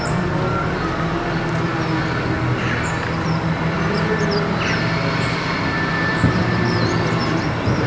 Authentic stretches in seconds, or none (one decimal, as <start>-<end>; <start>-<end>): 0.0-7.9